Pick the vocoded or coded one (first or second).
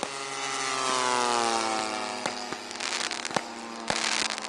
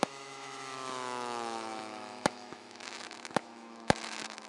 second